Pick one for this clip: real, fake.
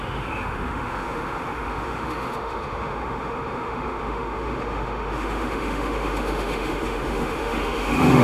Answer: fake